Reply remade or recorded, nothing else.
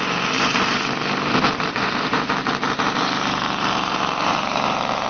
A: remade